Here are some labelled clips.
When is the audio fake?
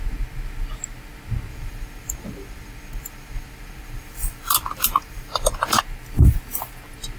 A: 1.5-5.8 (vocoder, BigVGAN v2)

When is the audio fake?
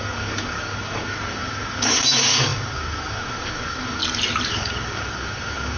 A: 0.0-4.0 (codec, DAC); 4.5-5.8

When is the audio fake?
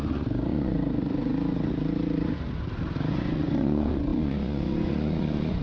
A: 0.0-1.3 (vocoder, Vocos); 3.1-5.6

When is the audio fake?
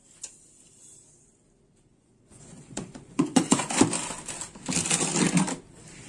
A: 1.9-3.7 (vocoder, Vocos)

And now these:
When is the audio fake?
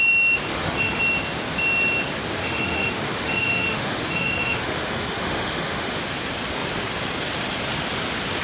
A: 0.5-1.0 (autoencoder, DAC-VAE); 2.4-6.0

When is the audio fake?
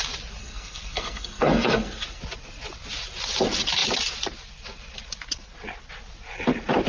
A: 0.4-2.2 (codec, SNAC)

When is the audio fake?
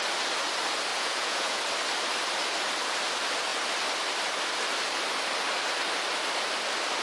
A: 0.9-1.6 (vocoder, Vocos)